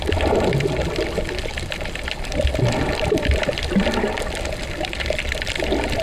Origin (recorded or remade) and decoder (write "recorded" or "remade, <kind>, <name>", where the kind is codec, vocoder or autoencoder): remade, vocoder, BigVGAN v2